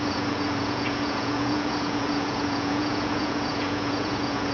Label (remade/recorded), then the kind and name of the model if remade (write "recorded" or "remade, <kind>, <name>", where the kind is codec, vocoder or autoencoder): remade, vocoder, Vocos